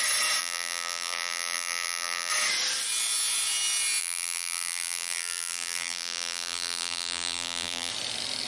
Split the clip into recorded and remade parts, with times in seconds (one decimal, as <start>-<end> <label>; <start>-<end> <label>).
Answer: 0.0-0.4 recorded; 0.4-2.3 remade; 2.3-4.0 recorded; 4.0-7.9 remade; 7.9-8.5 recorded